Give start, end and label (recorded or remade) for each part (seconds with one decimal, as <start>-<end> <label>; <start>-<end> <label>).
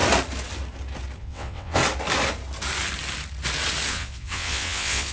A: 0.0-1.2 recorded; 1.2-1.8 remade; 1.8-3.9 recorded; 3.9-5.1 remade